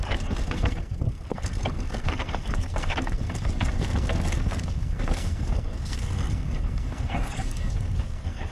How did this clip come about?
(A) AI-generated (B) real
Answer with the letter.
A